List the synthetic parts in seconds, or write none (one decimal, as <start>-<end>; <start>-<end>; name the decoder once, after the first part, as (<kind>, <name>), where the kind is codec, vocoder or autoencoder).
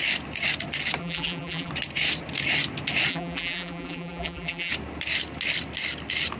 1.0-1.7 (vocoder, BigVGAN v2); 3.1-4.7